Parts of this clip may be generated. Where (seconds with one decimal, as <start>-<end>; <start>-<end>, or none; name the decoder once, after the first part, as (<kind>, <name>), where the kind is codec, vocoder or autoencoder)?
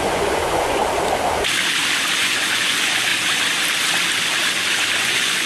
0.0-0.8 (vocoder, Vocos); 2.1-3.1; 5.0-5.5